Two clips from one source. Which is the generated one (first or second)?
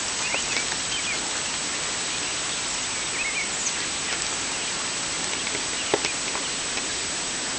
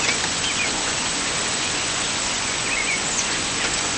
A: second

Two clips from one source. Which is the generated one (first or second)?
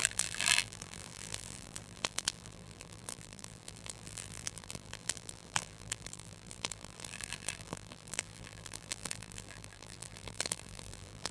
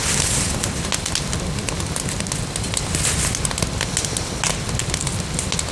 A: first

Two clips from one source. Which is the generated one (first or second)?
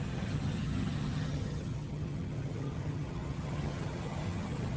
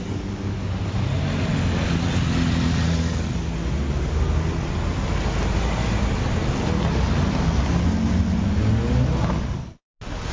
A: first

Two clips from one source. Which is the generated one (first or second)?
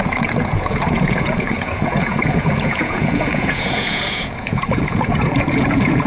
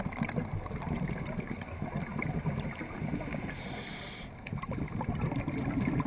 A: first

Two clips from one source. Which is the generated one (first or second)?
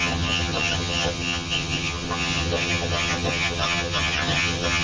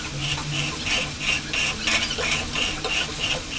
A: first